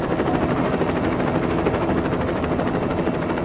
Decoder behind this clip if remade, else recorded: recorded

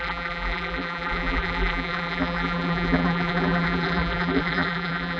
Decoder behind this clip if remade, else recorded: remade, vocoder, BigVGAN v2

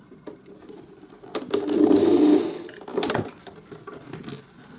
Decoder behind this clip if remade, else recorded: recorded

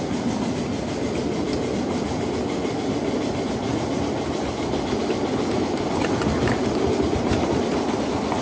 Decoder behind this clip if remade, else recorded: recorded